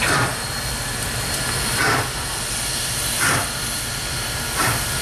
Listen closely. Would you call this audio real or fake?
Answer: fake